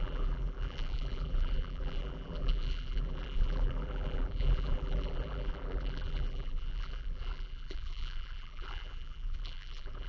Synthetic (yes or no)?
yes